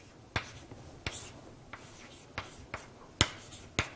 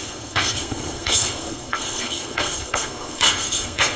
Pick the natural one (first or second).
first